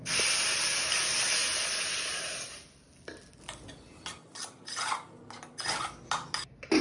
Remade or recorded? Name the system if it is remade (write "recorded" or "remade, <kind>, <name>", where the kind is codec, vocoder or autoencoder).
recorded